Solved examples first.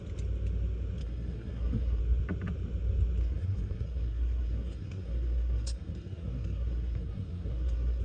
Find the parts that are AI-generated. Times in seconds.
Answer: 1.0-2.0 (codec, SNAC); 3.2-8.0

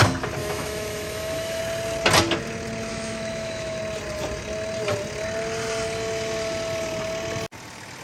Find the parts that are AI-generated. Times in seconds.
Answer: 0.4-1.6 (autoencoder, DAC-VAE); 2.9-3.8

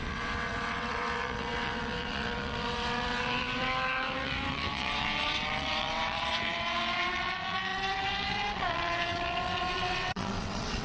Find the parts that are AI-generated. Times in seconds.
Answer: 0.0-10.8 (vocoder, WaveNeXt)

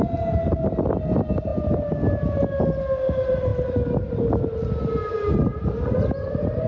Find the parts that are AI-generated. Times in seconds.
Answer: none